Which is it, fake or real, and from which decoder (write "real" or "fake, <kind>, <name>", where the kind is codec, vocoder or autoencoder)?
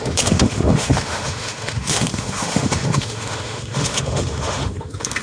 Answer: fake, autoencoder, DAC-VAE